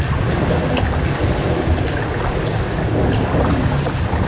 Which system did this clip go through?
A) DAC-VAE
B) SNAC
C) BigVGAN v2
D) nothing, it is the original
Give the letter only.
D